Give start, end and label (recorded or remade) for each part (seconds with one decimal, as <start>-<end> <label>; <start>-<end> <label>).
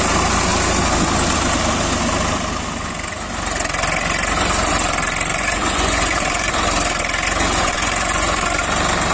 0.0-5.3 recorded; 5.3-6.5 remade; 6.5-7.6 recorded; 7.6-8.5 remade; 8.5-9.1 recorded